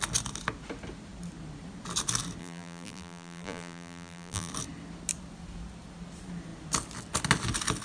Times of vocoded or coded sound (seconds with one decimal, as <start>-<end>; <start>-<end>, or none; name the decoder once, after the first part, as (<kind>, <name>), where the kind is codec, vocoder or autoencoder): 2.4-4.5 (vocoder, BigVGAN v2)